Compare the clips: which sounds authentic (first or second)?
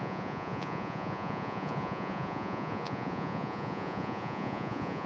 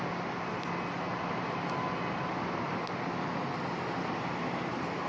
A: second